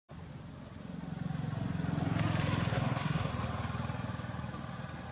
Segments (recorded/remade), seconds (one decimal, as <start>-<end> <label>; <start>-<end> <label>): 0.0-2.7 recorded; 2.7-3.3 remade; 3.3-5.1 recorded